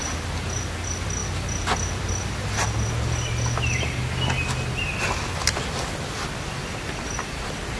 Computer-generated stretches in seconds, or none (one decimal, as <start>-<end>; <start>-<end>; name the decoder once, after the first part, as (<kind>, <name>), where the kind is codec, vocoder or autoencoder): none